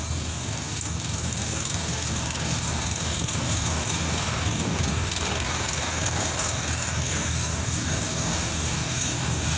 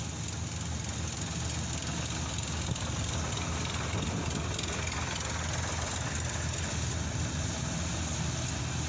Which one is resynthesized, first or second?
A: first